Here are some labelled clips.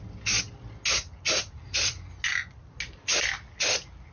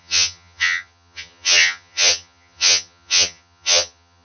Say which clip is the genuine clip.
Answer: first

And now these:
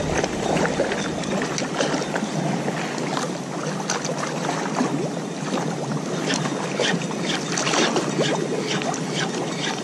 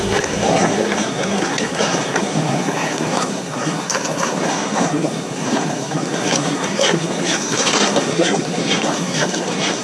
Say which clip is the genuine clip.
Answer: first